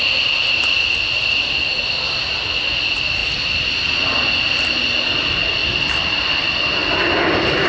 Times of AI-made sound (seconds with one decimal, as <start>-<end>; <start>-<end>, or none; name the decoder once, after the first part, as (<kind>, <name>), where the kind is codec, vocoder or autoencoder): none